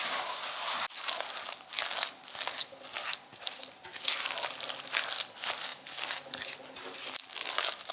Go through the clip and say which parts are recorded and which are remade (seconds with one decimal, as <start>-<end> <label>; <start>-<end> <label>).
0.0-7.9 recorded